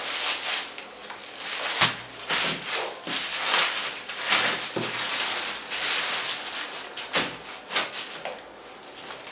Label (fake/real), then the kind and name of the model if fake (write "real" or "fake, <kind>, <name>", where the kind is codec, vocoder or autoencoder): real